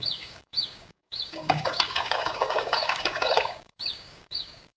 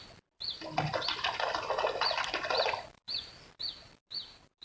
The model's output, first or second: first